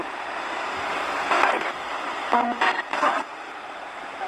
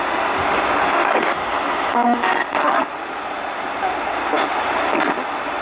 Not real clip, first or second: first